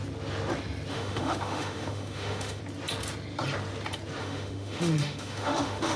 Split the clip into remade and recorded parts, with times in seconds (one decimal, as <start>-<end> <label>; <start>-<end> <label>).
0.0-0.9 recorded; 0.9-2.6 remade; 2.6-4.2 recorded; 4.2-6.0 remade